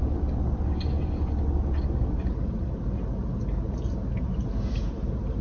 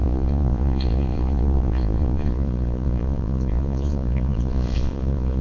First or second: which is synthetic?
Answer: second